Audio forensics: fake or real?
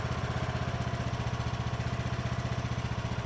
real